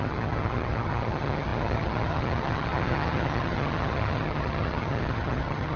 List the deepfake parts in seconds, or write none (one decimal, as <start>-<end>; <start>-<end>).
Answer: 0.0-5.8

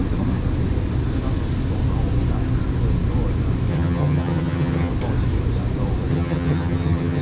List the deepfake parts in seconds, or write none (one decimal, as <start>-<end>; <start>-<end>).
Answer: 3.7-4.9; 6.1-7.2

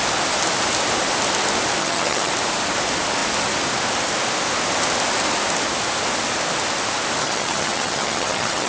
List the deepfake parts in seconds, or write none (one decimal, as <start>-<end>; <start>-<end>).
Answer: 1.8-2.3; 7.2-8.7

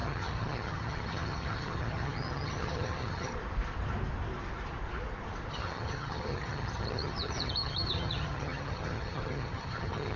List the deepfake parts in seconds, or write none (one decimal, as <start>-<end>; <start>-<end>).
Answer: 0.0-3.3; 5.5-10.2